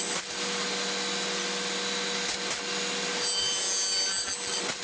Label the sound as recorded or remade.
recorded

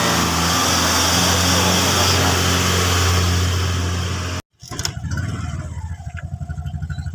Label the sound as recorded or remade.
recorded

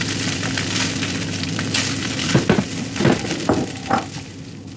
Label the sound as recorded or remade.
recorded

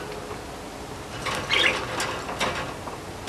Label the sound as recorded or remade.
recorded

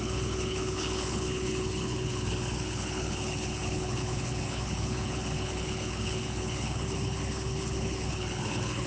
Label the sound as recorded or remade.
remade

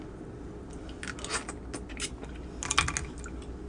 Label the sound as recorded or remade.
recorded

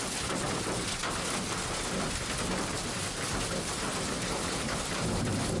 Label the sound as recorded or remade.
recorded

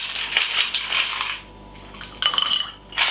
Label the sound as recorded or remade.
recorded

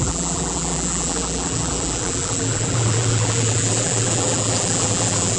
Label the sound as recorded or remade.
remade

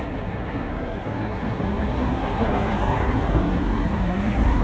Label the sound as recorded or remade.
remade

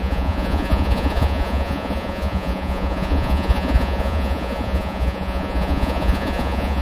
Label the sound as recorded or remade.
remade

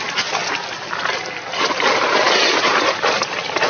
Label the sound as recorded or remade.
recorded